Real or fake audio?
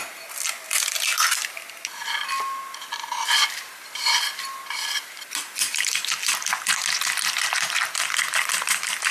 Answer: real